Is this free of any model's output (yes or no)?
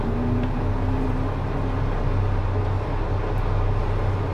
yes